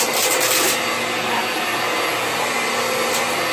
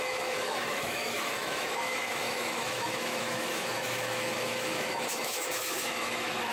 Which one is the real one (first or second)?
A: first